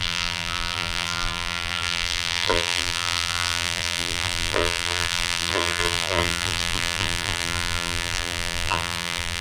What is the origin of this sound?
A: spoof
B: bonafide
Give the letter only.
A